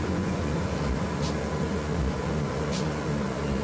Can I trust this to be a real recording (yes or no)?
no